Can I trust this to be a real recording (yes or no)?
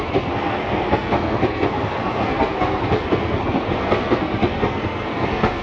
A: no